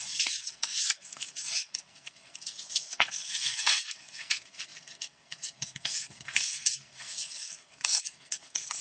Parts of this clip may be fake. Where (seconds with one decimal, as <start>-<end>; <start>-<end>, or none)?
0.0-8.8